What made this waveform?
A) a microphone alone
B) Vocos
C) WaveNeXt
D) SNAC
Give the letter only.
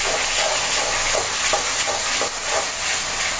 A